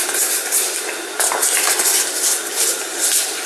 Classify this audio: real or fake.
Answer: real